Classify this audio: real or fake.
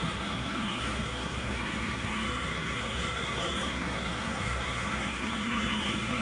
fake